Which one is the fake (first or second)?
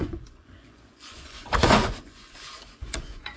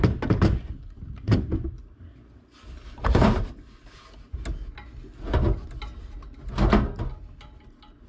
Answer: first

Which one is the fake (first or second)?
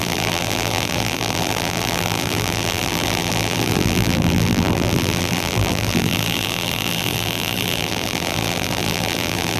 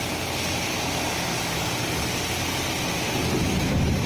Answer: first